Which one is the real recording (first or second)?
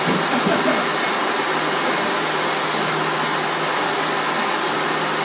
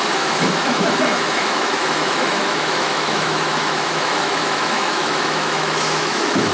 first